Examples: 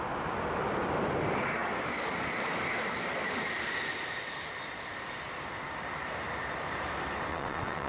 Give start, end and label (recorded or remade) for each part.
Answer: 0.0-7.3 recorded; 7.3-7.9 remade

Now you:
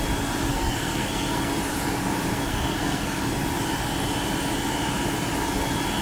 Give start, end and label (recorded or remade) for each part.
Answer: 0.0-0.5 recorded; 0.5-1.5 remade; 1.5-2.3 recorded; 2.3-3.2 remade; 3.2-6.0 recorded

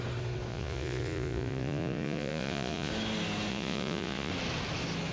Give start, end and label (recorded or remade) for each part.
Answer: 0.0-0.5 recorded; 0.5-2.9 remade; 2.9-3.5 recorded; 3.5-4.3 remade; 4.3-5.1 recorded

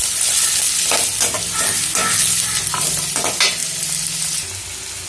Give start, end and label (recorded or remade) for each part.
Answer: 0.0-5.1 recorded

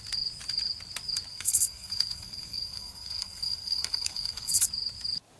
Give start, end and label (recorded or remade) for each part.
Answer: 0.0-1.3 recorded; 1.3-4.5 remade; 4.5-5.4 recorded

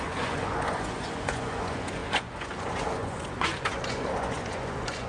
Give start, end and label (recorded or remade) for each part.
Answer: 0.0-5.1 remade

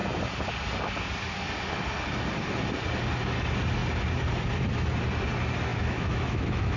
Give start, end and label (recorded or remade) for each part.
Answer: 0.0-5.7 recorded; 5.7-6.8 remade